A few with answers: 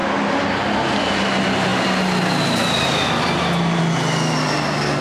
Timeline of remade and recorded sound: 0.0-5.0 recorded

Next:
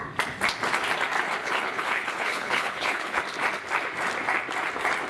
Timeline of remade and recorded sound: 0.0-1.4 recorded; 1.4-3.2 remade; 3.2-5.1 recorded

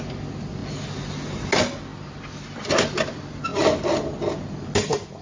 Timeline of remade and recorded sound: 0.0-5.2 recorded

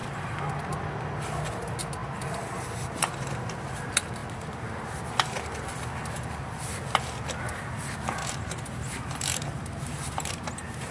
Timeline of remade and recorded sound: 0.0-4.2 recorded; 4.2-5.1 remade; 5.1-8.2 recorded; 8.2-10.3 remade; 10.3-10.9 recorded